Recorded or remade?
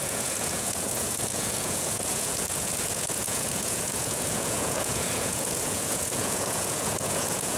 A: remade